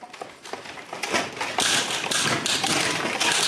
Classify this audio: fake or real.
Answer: real